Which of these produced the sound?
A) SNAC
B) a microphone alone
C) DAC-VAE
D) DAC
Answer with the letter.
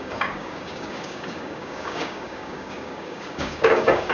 D